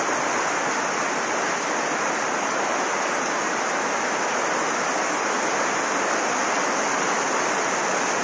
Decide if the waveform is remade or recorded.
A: recorded